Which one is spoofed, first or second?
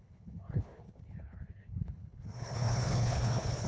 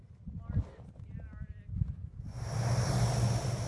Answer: first